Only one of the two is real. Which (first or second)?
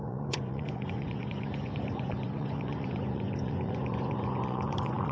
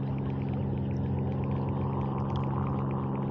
second